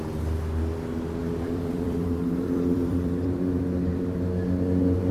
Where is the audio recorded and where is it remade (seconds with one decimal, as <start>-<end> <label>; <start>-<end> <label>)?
0.0-1.2 recorded; 1.2-3.6 remade; 3.6-5.1 recorded